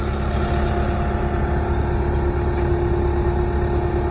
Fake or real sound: real